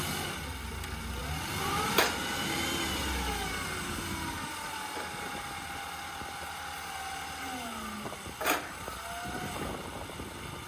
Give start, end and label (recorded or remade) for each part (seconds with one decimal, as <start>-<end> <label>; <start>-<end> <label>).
0.0-10.7 recorded